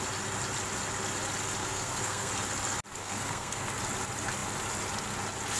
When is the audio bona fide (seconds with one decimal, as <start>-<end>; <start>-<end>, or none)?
0.0-1.6; 2.3-3.0; 3.6-5.6